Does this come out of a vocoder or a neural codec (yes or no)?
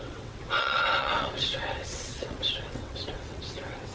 yes